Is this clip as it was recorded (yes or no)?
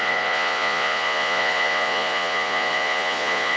no